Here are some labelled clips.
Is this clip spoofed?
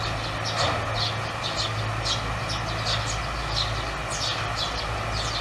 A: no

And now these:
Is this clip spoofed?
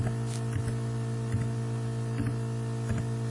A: no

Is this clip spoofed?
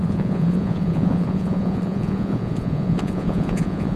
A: yes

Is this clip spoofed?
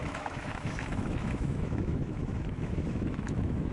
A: yes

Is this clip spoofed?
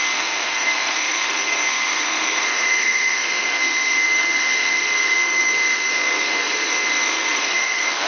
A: yes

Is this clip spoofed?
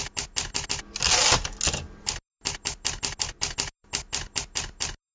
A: no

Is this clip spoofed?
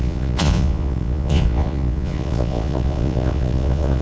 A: yes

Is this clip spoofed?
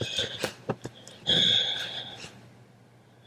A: no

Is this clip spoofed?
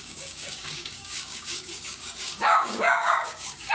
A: yes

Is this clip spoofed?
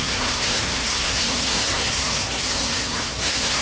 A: yes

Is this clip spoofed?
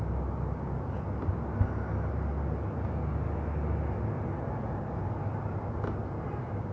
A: no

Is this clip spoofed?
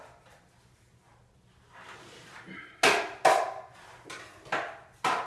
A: no